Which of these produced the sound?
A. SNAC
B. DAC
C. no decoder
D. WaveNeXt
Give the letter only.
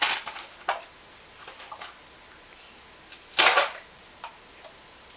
C